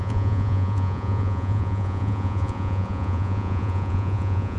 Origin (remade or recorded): remade